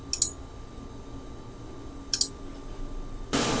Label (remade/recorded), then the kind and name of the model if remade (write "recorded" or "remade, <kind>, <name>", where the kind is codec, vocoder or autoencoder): recorded